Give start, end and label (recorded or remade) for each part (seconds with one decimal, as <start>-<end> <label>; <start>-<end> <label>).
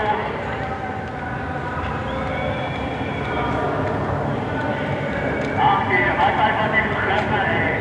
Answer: 0.0-7.8 recorded